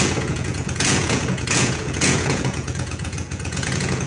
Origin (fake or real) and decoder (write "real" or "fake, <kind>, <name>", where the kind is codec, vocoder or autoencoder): fake, vocoder, Vocos